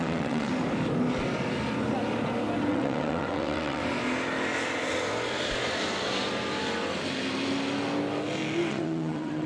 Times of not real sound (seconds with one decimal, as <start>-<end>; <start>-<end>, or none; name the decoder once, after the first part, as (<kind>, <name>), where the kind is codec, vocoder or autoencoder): 0.0-0.5 (vocoder, WaveNeXt); 2.7-3.8; 8.7-9.5